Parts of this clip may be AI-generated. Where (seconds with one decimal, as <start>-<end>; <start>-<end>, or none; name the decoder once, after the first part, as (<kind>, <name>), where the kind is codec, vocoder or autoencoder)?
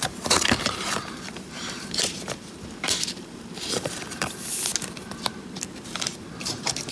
0.0-4.7 (vocoder, BigVGAN v2); 6.2-6.9